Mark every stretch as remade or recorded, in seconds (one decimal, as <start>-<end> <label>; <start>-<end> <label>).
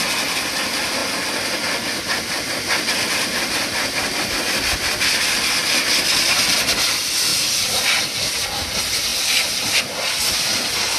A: 0.0-7.3 recorded; 7.3-8.0 remade; 8.0-9.1 recorded; 9.1-9.8 remade; 9.8-11.0 recorded